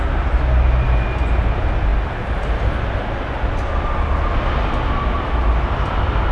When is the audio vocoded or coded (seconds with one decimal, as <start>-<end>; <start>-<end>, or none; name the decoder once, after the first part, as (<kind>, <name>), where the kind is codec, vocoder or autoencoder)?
none